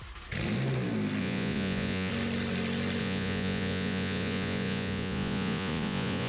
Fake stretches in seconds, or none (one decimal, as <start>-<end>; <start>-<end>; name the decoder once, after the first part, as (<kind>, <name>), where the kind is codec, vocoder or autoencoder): 1.2-2.1 (vocoder, Vocos); 3.0-6.3